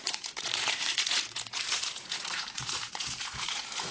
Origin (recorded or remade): remade